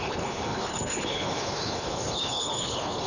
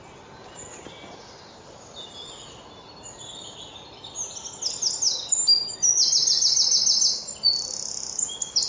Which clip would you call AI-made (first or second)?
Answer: first